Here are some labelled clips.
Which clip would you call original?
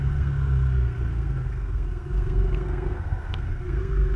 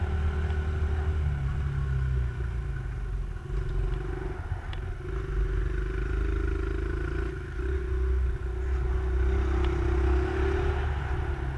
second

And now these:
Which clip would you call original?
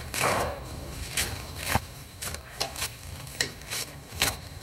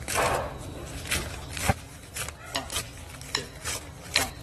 second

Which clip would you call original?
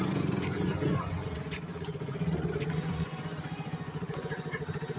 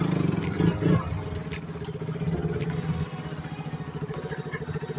second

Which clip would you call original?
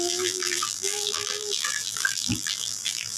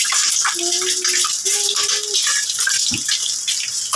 second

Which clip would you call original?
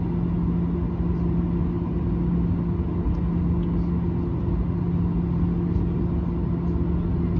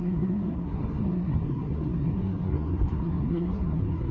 first